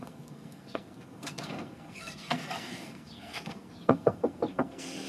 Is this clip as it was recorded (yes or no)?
no